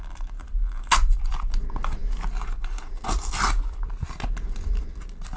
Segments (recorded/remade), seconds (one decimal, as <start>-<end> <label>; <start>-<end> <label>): 0.0-5.4 recorded